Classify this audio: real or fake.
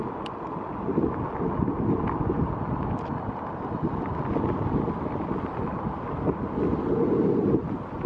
real